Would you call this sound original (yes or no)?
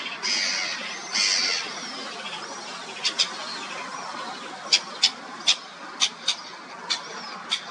yes